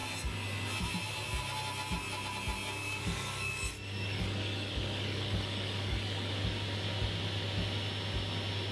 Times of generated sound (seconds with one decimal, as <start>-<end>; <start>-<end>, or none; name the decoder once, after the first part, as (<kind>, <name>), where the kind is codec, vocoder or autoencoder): 2.8-6.3 (codec, DAC)